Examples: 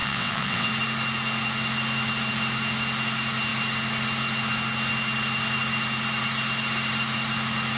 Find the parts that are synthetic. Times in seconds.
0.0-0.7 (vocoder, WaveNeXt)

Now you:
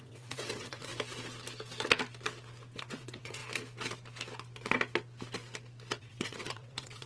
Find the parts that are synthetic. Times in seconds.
0.0-0.9 (vocoder, WaveNeXt); 2.8-3.4; 6.0-7.1

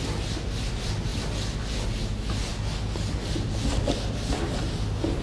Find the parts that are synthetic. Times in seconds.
none

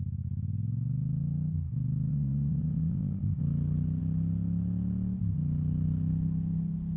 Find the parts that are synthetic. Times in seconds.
2.1-3.4 (vocoder, WaveNeXt)

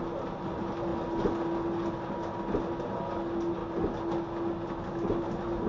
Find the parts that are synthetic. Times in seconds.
none